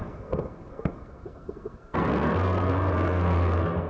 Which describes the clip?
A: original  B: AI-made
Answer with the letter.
B